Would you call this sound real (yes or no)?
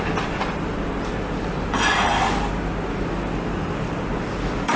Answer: yes